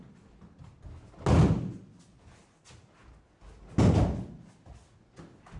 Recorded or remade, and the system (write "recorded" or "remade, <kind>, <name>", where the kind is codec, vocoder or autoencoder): recorded